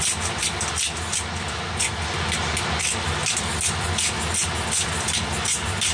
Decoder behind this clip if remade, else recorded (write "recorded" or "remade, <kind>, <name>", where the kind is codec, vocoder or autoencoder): recorded